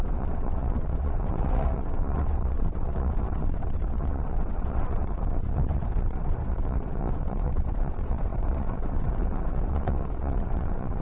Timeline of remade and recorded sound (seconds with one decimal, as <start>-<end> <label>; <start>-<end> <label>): 0.0-11.0 remade

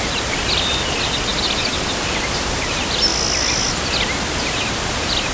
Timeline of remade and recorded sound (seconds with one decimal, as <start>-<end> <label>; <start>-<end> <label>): 0.0-1.3 recorded; 1.3-2.4 remade; 2.4-5.3 recorded

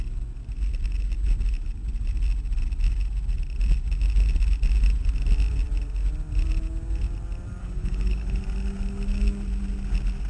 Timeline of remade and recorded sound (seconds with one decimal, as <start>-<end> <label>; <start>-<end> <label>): 0.0-7.6 recorded; 7.6-8.4 remade; 8.4-10.3 recorded